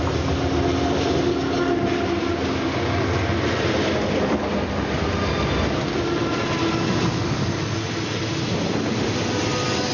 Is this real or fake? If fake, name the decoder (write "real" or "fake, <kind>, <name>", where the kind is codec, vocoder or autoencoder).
real